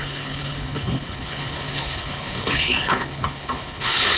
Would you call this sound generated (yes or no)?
yes